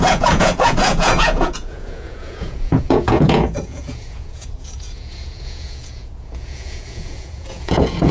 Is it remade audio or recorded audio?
remade